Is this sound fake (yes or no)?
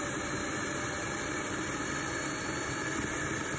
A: no